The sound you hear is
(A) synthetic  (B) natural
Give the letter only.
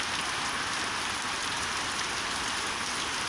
B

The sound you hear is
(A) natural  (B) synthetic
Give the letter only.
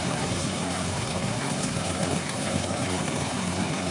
B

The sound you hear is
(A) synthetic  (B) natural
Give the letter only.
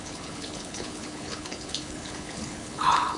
A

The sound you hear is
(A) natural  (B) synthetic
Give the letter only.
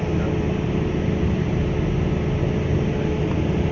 A